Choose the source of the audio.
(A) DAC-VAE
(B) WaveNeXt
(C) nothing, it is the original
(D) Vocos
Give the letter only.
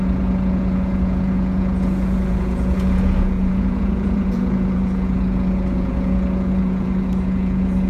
D